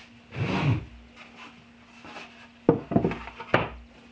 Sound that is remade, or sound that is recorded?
recorded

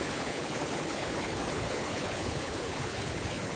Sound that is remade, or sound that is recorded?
remade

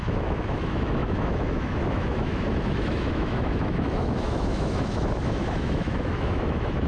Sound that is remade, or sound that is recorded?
remade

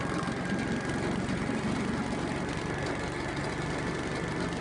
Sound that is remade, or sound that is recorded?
recorded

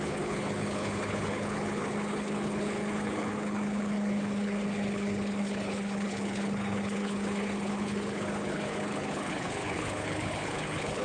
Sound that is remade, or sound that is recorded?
remade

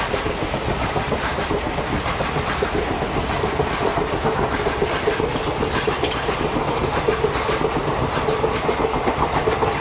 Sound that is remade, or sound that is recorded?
recorded